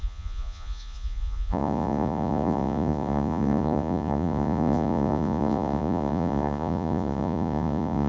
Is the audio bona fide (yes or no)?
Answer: no